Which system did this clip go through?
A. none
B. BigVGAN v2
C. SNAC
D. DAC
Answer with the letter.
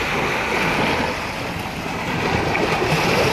A